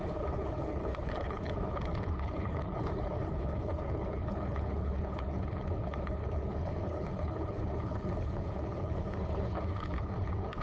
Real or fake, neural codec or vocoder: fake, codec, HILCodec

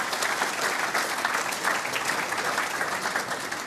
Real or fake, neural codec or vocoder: real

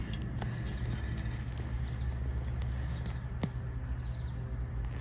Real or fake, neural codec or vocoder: real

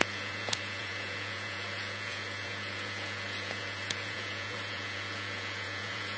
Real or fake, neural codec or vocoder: fake, vocoder, Vocos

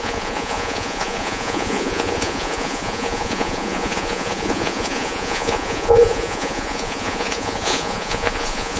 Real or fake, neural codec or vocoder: fake, vocoder, Vocos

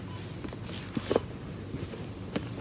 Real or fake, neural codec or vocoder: real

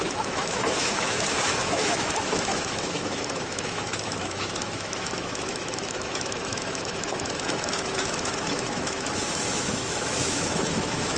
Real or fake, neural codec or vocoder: fake, autoencoder, DAC-VAE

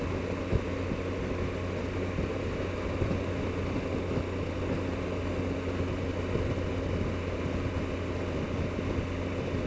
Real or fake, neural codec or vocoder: real